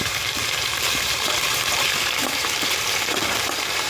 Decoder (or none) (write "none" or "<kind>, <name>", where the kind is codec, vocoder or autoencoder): vocoder, BigVGAN v2